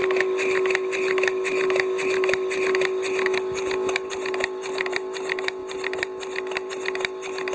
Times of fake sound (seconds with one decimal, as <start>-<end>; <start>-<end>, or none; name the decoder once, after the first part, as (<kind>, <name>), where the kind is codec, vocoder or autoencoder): 4.1-7.5 (vocoder, BigVGAN v2)